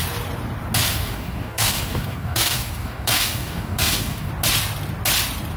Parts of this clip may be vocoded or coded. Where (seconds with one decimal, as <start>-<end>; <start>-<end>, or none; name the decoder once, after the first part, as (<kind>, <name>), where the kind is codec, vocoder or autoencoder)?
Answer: 0.9-4.3 (codec, DAC)